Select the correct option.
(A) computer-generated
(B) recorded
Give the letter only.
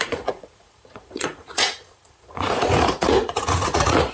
A